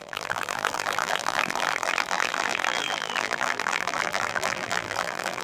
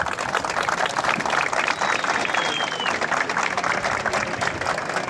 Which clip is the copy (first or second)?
first